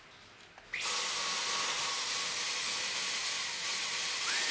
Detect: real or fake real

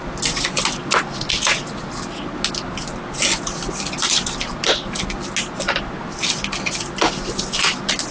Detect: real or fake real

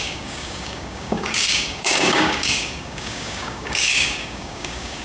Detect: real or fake fake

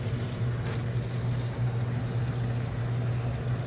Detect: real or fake real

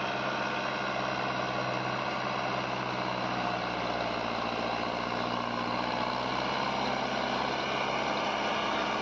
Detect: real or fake real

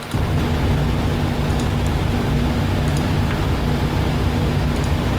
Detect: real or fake real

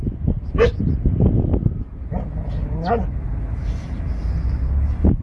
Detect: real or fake real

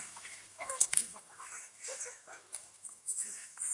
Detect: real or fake fake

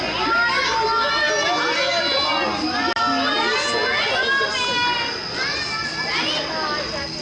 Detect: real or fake real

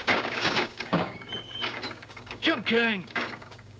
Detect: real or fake fake